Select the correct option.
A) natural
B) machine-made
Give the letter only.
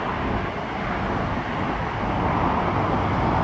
A